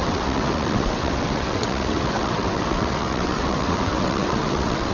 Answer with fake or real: fake